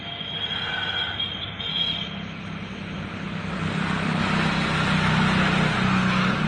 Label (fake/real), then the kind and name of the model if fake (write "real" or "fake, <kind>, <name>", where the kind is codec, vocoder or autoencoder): real